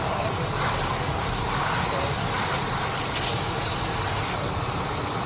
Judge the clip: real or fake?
real